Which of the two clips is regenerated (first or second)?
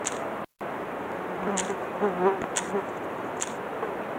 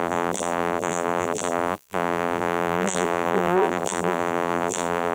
second